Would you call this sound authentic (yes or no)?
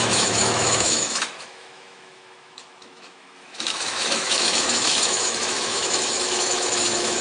no